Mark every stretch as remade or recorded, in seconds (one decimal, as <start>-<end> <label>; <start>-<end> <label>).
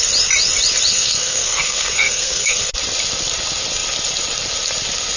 0.0-0.9 recorded; 0.9-2.7 remade; 2.7-5.2 recorded